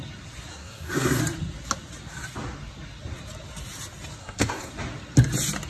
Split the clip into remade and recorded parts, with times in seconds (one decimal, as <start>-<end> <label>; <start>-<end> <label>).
0.0-0.5 recorded; 0.5-1.2 remade; 1.2-4.2 recorded; 4.2-4.7 remade; 4.7-5.7 recorded